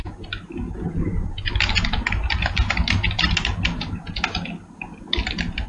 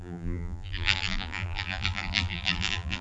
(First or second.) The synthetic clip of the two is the second